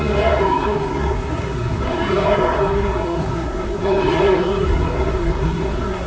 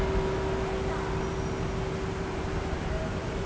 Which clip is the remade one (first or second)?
first